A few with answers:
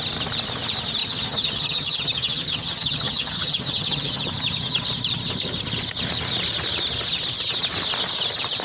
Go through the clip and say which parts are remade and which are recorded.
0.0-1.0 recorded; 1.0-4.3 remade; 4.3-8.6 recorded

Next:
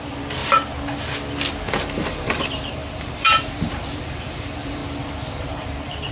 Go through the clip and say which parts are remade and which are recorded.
0.0-0.4 remade; 0.4-1.7 recorded; 1.7-4.8 remade; 4.8-5.4 recorded; 5.4-6.1 remade

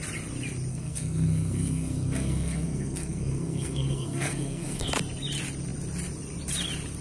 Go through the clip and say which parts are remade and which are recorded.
0.0-0.7 recorded; 0.7-4.9 remade; 4.9-7.0 recorded

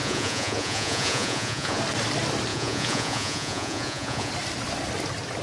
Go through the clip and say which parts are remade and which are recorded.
0.0-1.8 remade; 1.8-2.5 recorded; 2.5-4.3 remade; 4.3-5.4 recorded